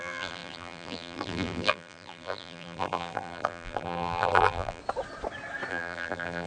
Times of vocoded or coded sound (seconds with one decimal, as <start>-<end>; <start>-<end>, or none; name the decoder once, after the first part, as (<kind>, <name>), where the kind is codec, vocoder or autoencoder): 0.0-4.8 (vocoder, BigVGAN v2); 5.7-6.5